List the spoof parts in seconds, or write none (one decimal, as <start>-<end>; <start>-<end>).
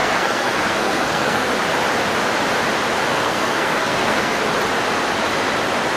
0.0-1.5; 3.1-4.4